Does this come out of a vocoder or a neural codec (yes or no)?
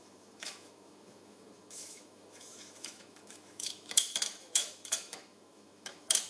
yes